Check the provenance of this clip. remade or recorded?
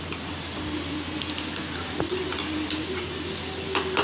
recorded